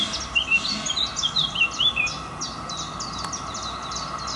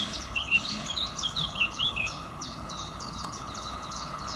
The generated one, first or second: second